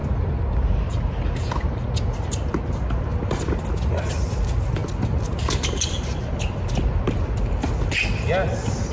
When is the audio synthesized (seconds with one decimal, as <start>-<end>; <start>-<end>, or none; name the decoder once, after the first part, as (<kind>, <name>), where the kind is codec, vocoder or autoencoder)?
none